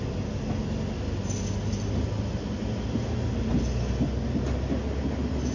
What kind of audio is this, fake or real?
real